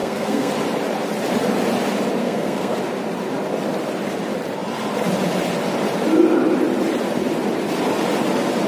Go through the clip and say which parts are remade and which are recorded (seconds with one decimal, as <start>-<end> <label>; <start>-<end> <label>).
0.0-0.5 remade; 0.5-2.2 recorded; 2.2-2.8 remade; 2.8-8.7 recorded